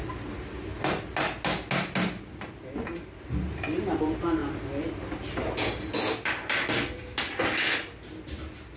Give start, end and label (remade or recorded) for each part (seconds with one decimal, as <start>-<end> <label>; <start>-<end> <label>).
0.0-8.8 recorded